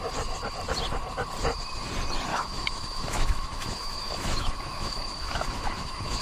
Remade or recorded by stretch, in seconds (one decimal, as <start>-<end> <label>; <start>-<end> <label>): 0.0-2.3 recorded; 2.3-6.2 remade